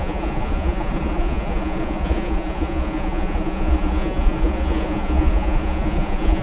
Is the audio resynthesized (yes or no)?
yes